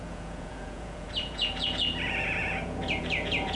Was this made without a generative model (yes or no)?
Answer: no